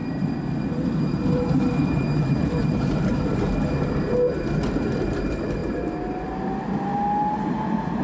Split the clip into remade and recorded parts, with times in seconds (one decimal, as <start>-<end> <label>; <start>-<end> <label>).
0.0-3.4 remade; 3.4-8.0 recorded